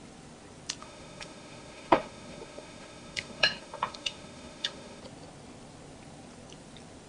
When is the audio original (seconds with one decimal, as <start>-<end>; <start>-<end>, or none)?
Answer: 0.0-0.8; 5.0-7.1